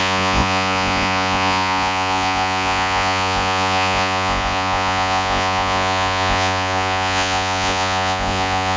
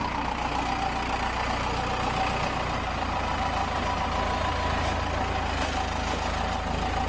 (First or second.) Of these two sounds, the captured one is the second